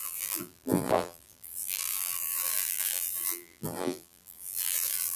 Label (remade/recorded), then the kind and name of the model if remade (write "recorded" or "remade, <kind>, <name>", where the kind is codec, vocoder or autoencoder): remade, vocoder, BigVGAN v2